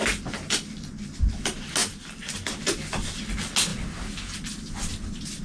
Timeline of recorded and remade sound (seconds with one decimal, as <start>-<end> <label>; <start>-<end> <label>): 0.0-5.4 recorded